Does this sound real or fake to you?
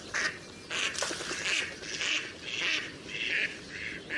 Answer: real